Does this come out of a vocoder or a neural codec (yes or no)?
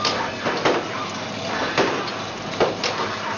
no